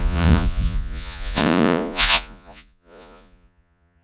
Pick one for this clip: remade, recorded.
remade